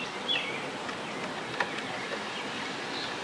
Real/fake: real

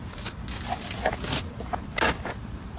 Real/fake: real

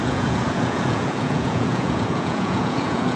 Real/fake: fake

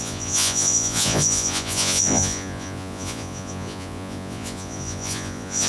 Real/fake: fake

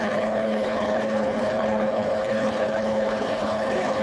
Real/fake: fake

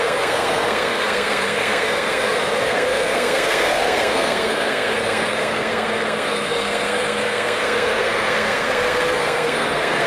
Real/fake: fake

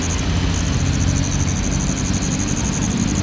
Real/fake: real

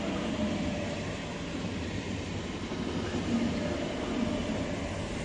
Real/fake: real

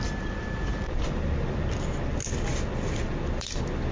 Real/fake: fake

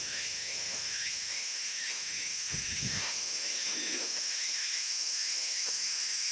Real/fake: fake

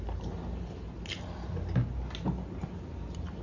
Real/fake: real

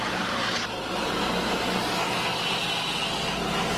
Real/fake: real